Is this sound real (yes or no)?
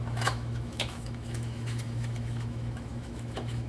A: no